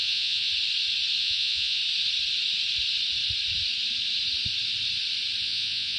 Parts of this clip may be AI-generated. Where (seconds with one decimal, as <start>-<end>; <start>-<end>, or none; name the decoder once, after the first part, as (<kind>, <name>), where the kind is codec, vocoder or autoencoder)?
0.0-0.5 (vocoder, Vocos); 1.2-1.8; 5.4-6.0